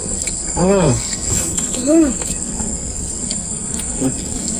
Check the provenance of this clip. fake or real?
fake